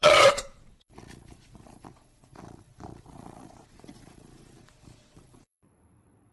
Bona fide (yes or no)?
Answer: no